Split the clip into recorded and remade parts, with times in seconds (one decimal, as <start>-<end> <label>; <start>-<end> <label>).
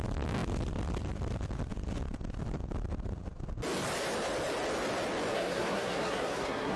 0.0-5.3 recorded; 5.3-6.8 remade